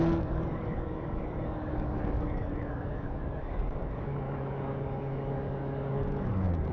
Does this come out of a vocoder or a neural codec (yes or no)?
yes